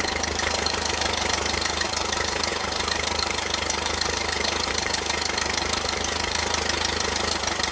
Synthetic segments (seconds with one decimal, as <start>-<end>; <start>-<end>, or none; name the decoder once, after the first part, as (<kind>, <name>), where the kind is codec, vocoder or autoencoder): 0.0-6.4 (codec, DAC)